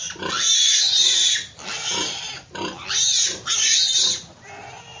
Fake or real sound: real